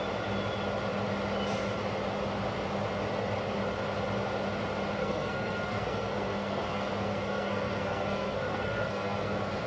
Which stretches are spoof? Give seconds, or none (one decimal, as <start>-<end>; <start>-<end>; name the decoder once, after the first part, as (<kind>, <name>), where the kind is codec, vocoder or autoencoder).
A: 5.0-9.7 (codec, SNAC)

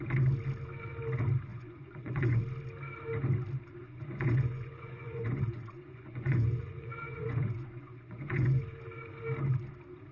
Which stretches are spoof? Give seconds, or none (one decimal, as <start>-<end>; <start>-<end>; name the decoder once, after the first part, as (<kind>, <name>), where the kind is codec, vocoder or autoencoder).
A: 1.5-2.4 (vocoder, Vocos); 3.7-8.6